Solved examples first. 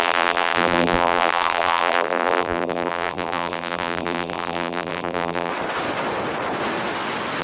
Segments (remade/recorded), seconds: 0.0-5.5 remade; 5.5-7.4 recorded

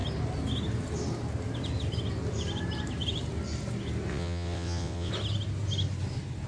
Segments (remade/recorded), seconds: 0.0-4.1 recorded; 4.1-5.1 remade; 5.1-6.5 recorded

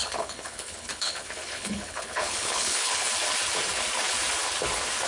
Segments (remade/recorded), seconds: 0.0-3.1 remade; 3.1-5.1 recorded

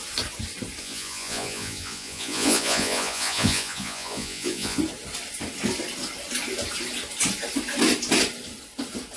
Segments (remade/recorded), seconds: 0.0-0.8 recorded; 0.8-4.8 remade; 4.8-9.2 recorded

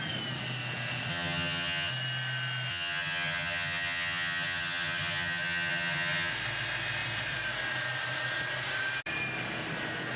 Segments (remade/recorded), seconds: 0.0-1.1 recorded; 1.1-1.9 remade; 1.9-2.7 recorded; 2.7-6.3 remade; 6.3-10.2 recorded

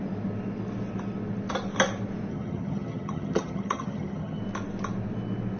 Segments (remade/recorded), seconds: 0.0-2.3 recorded; 2.3-4.4 remade; 4.4-5.6 recorded